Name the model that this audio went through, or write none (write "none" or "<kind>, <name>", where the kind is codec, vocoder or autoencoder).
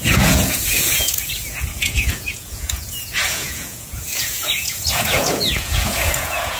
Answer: vocoder, Vocos